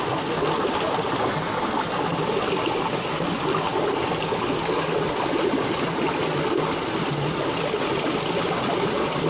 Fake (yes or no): no